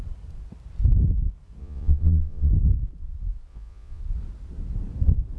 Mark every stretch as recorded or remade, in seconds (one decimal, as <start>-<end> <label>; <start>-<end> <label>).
0.0-1.6 recorded; 1.6-2.5 remade; 2.5-3.5 recorded; 3.5-4.0 remade; 4.0-5.4 recorded